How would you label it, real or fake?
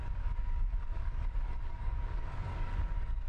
fake